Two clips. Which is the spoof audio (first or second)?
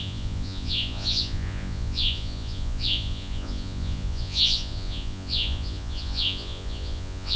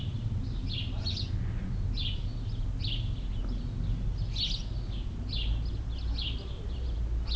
first